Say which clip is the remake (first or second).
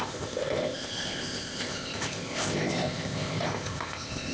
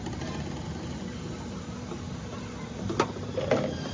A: first